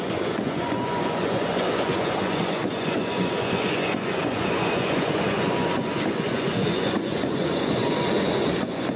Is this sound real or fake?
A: fake